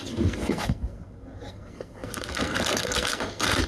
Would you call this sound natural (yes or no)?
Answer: no